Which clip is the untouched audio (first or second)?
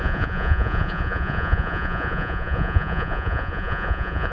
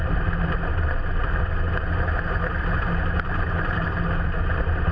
second